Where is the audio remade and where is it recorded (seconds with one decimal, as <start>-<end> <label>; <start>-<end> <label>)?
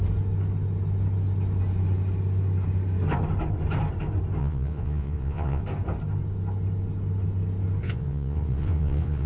0.0-4.4 recorded; 4.4-5.6 remade; 5.6-7.8 recorded; 7.8-9.3 remade